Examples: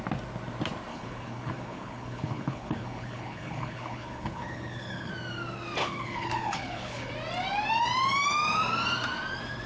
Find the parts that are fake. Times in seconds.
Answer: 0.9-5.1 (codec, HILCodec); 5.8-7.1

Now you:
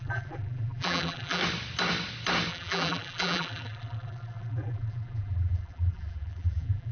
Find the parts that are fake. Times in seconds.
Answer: 0.0-1.4 (vocoder, BigVGAN v2); 2.5-6.9

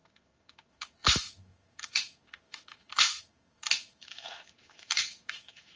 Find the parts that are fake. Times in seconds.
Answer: 0.0-5.8 (autoencoder, DAC-VAE)

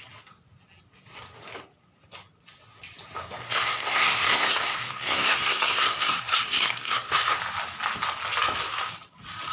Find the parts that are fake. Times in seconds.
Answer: 3.2-7.4 (codec, SNAC)

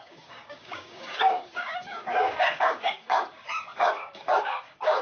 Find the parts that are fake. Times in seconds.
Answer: 0.0-5.0 (codec, DAC)